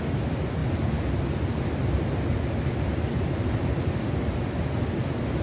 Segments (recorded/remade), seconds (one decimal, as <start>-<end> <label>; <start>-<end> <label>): 0.0-5.4 recorded